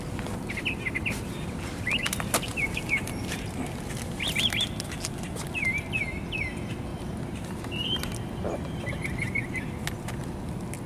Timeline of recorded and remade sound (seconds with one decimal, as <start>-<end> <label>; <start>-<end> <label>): 0.0-2.5 recorded; 2.5-3.4 remade; 3.4-6.9 recorded; 6.9-8.0 remade; 8.0-10.9 recorded